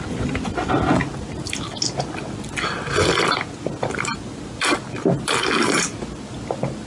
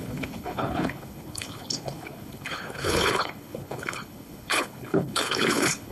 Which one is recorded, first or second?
first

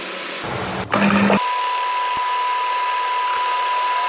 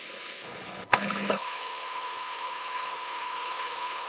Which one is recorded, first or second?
first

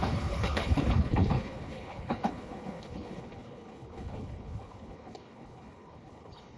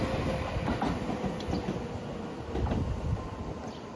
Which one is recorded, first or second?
second